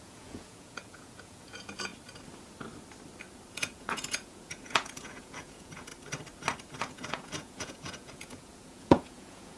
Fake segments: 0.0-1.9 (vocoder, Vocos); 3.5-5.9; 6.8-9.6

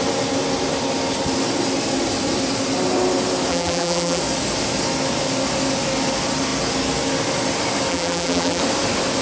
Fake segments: 3.5-4.2 (vocoder, BigVGAN v2); 7.9-8.6

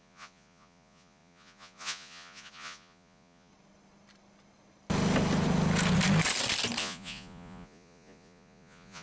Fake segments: 0.0-3.5 (vocoder, Vocos); 6.8-9.0

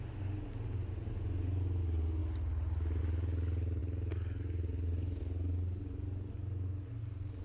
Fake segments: none

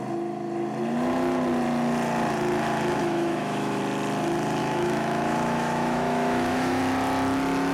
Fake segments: 3.0-3.8 (autoencoder, DAC-VAE); 4.6-6.8